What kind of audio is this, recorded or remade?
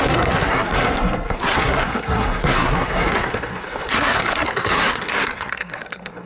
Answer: remade